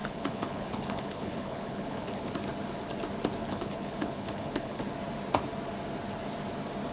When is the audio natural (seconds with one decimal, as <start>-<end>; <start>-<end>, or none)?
2.3-3.4; 4.8-6.9